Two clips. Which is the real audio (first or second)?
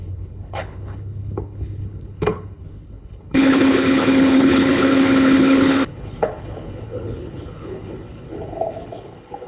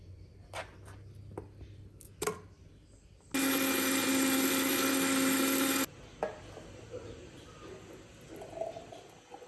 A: second